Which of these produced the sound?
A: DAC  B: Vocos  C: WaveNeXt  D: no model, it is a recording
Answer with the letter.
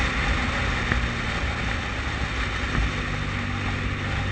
D